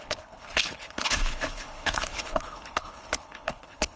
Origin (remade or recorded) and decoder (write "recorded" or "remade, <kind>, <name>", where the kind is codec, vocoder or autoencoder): remade, codec, HILCodec